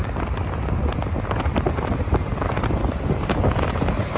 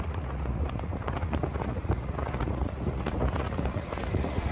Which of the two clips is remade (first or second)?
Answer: second